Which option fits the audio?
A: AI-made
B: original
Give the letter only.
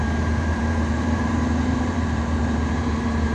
A